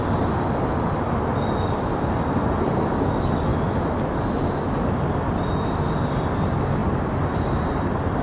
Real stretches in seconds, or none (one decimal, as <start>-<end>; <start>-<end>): 0.0-8.2